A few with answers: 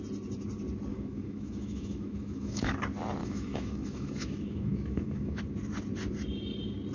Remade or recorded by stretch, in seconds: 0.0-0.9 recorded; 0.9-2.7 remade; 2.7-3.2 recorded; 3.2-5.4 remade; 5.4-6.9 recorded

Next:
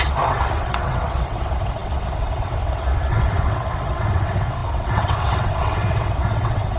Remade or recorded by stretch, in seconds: 0.0-6.8 remade

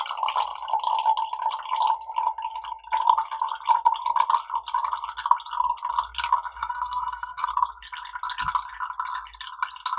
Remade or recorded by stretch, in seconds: 0.0-6.6 recorded; 6.6-7.5 remade; 7.5-10.0 recorded

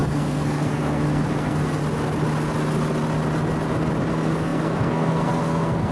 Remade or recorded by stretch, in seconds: 0.0-1.8 remade; 1.8-4.1 recorded; 4.1-5.9 remade

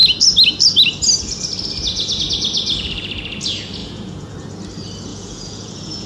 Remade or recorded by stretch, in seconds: 0.0-3.8 recorded; 3.8-4.3 remade; 4.3-5.1 recorded; 5.1-6.1 remade

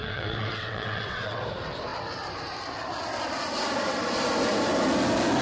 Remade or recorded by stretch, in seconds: 0.0-1.4 remade; 1.4-5.4 recorded

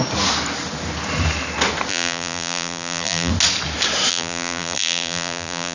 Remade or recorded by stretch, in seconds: 0.0-1.9 recorded; 1.9-3.3 remade; 3.3-4.1 recorded; 4.1-5.7 remade